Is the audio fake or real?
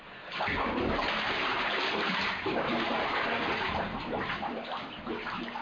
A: fake